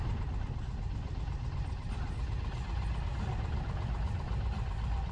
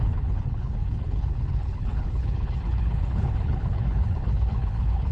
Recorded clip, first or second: first